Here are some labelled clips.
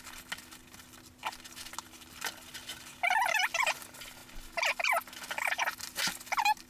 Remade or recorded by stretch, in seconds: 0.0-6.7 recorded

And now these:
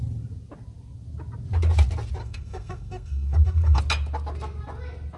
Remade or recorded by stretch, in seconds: 0.0-2.2 recorded; 2.2-3.8 remade; 3.8-5.2 recorded

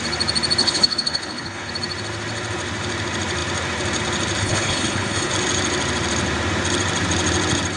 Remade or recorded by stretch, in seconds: 0.0-0.6 recorded; 0.6-1.7 remade; 1.7-4.4 recorded; 4.4-5.3 remade; 5.3-7.8 recorded

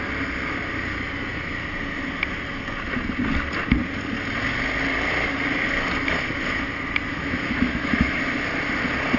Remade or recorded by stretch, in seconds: 0.0-7.1 recorded; 7.1-8.2 remade; 8.2-9.2 recorded

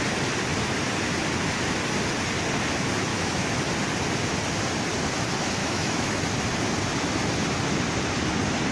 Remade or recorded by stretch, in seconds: 0.0-3.1 recorded; 3.1-3.6 remade; 3.6-5.6 recorded; 5.6-6.2 remade; 6.2-8.7 recorded

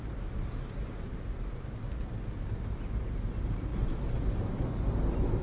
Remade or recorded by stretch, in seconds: 0.0-5.4 recorded